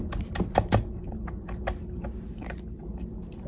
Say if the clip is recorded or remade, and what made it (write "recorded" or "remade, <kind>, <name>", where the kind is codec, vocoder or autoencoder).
recorded